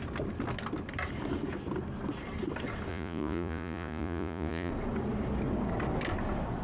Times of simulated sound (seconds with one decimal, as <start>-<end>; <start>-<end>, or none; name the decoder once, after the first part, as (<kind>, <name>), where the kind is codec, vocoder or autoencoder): 2.9-4.7 (vocoder, Vocos)